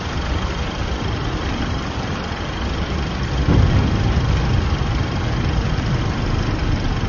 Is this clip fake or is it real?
real